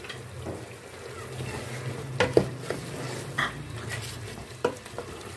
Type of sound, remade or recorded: recorded